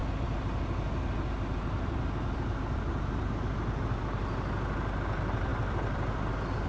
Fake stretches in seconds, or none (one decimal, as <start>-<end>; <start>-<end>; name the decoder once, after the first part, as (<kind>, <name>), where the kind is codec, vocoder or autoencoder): none